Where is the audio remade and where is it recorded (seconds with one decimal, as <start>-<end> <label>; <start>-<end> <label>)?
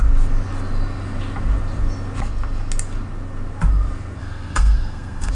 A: 0.0-4.2 recorded; 4.2-5.3 remade